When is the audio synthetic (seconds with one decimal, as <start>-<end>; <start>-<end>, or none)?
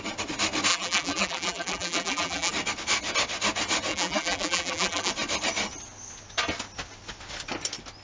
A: 0.7-2.5; 3.9-5.1